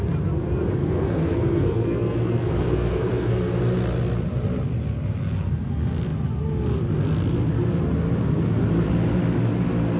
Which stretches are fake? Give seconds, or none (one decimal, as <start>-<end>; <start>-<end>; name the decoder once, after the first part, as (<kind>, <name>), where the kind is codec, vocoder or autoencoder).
0.8-3.6 (codec, SNAC)